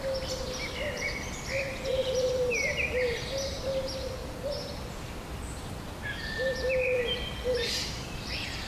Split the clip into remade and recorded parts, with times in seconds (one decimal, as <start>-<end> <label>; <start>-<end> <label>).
0.0-4.2 remade; 4.2-4.8 recorded; 4.8-8.7 remade